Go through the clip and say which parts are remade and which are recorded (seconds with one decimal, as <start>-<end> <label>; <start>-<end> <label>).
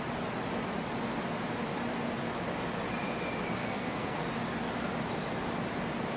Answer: 0.0-3.6 recorded; 3.6-4.2 remade; 4.2-6.2 recorded